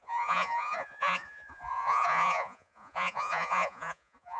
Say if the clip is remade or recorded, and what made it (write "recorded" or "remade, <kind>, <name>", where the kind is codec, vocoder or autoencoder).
remade, vocoder, Vocos